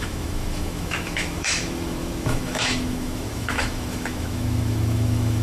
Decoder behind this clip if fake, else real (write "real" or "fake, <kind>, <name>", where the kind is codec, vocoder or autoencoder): fake, autoencoder, DAC-VAE